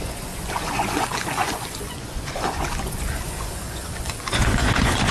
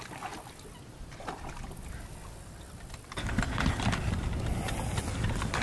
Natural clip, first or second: second